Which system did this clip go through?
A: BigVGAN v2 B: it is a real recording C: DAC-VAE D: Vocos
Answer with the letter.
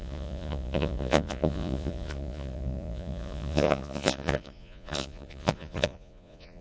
D